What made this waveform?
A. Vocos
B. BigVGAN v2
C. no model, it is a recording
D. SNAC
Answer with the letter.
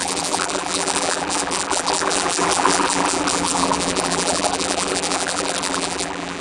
B